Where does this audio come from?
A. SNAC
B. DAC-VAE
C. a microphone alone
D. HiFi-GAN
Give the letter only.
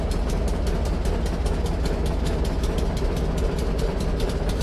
C